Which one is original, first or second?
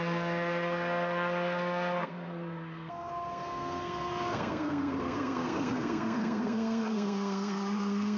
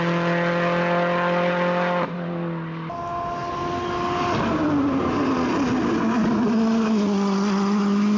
second